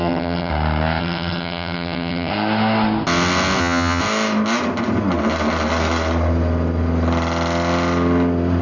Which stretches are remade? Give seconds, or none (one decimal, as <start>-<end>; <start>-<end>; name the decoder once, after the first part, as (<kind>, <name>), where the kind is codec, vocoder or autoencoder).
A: 0.0-0.5 (vocoder, HiFi-GAN); 1.0-2.3; 3.6-4.0